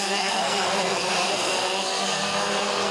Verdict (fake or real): fake